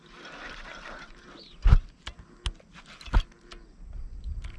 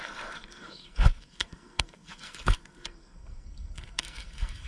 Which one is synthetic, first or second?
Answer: second